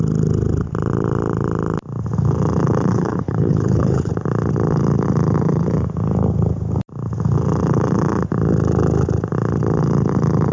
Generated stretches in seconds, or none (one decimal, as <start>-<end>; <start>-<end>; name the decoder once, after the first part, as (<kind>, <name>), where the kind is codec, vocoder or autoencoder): 2.9-4.1 (codec, HILCodec)